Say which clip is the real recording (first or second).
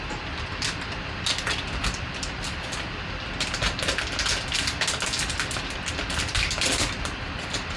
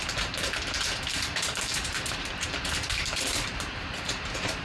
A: first